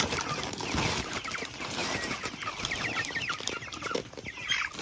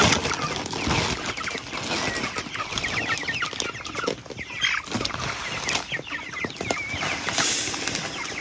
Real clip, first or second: second